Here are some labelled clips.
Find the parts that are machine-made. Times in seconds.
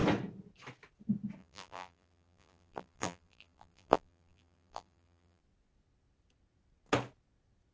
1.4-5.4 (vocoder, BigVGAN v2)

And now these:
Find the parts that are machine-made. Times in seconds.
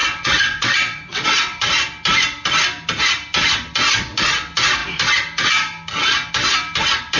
0.0-1.6 (vocoder, WaveNeXt)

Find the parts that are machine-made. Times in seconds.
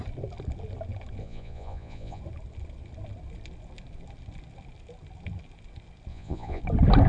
1.2-2.2 (vocoder, Vocos); 6.1-6.6